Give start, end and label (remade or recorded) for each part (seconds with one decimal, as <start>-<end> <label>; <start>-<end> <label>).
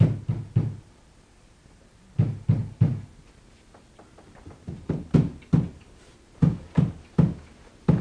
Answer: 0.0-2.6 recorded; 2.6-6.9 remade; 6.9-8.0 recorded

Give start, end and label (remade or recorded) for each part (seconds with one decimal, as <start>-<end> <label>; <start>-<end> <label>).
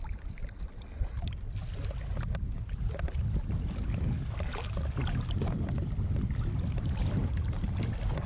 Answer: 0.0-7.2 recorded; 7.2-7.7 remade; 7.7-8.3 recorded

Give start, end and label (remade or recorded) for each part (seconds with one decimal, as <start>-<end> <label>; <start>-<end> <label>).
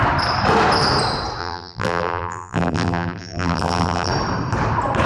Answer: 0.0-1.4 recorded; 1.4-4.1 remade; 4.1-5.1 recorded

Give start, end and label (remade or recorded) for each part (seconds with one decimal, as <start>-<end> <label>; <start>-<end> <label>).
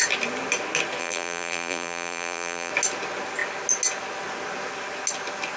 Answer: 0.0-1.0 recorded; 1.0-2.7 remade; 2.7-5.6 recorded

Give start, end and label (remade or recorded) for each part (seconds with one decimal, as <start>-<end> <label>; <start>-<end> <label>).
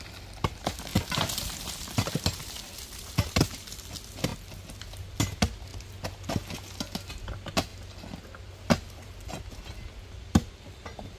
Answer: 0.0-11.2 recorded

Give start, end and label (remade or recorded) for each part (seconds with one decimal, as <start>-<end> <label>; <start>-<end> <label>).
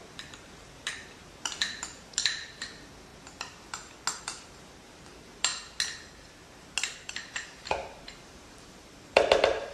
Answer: 0.0-3.1 remade; 3.1-4.2 recorded; 4.2-5.5 remade; 5.5-7.1 recorded; 7.1-9.7 remade